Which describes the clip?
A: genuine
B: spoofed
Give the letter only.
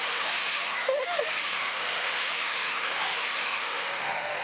B